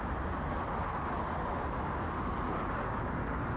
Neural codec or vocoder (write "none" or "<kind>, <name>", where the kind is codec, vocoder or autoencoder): none